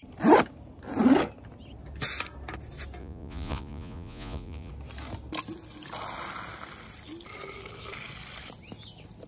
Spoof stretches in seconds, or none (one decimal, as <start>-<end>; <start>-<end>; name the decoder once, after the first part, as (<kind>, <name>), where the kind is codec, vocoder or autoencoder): 3.0-4.7 (vocoder, Vocos)